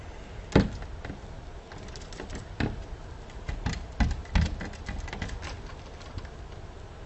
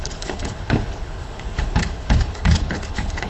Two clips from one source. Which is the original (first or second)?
first